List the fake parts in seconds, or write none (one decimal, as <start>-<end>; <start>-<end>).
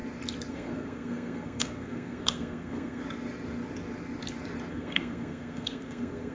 0.5-3.0; 4.7-6.3